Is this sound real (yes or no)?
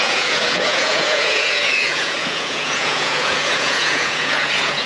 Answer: no